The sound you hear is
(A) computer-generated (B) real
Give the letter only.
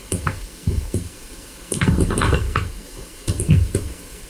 A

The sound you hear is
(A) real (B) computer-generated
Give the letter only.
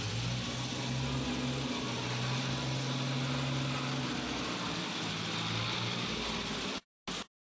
A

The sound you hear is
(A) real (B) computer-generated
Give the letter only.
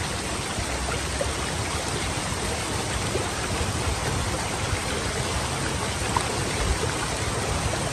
A